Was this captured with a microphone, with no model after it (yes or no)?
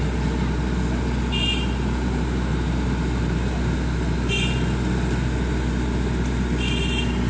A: yes